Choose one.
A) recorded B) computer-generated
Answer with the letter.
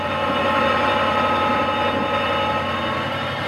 A